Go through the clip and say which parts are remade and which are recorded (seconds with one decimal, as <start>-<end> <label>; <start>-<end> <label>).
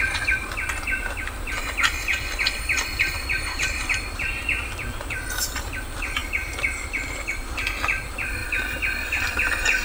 0.0-2.1 recorded; 2.1-4.4 remade; 4.4-8.4 recorded; 8.4-9.3 remade; 9.3-9.8 recorded